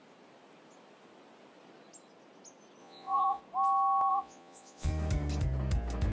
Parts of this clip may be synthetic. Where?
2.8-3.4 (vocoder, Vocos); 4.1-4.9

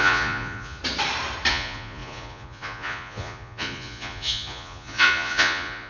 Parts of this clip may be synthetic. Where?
0.0-0.8 (vocoder, Vocos); 1.5-5.9

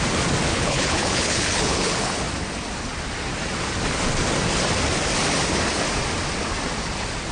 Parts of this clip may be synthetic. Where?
0.5-2.2 (codec, HILCodec)

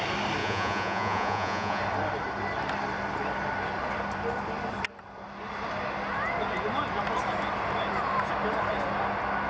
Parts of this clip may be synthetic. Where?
0.4-1.8 (vocoder, Vocos)

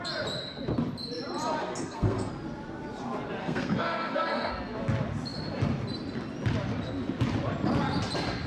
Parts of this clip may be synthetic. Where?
1.6-2.3 (codec, SNAC); 3.4-4.5

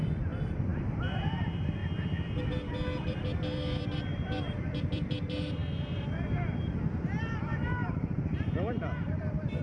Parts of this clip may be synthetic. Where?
0.0-1.8 (vocoder, BigVGAN v2); 3.0-5.6; 7.2-9.6

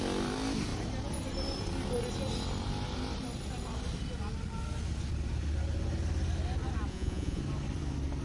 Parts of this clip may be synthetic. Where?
6.9-7.4 (vocoder, Vocos)